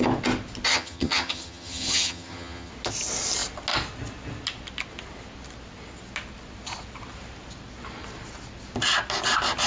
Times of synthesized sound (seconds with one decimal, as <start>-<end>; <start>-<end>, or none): 0.7-2.7